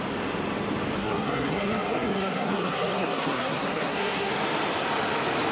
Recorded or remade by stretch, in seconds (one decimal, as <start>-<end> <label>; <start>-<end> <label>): 0.0-1.0 recorded; 1.0-4.3 remade; 4.3-5.5 recorded